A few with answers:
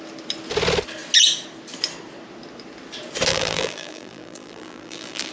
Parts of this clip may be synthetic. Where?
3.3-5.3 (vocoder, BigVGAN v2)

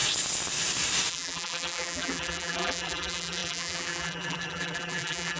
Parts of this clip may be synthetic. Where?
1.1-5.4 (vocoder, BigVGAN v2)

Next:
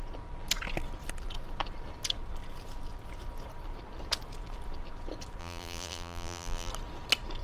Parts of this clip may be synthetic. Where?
5.4-6.7 (vocoder, BigVGAN v2)

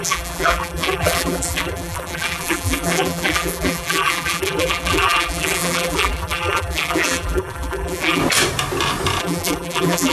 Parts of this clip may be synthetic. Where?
0.0-8.2 (vocoder, BigVGAN v2); 9.2-10.1

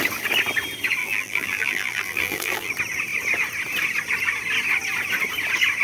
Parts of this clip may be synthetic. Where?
1.0-2.7 (vocoder, BigVGAN v2)

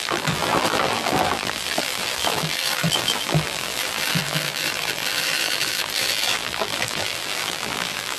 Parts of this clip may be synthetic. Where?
0.0-8.2 (vocoder, BigVGAN v2)

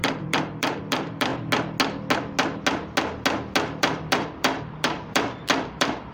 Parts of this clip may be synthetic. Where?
0.0-1.3 (vocoder, BigVGAN v2); 3.8-6.1

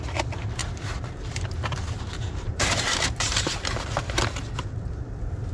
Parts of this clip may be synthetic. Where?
0.6-3.9 (vocoder, BigVGAN v2)